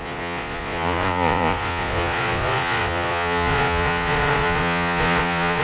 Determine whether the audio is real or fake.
fake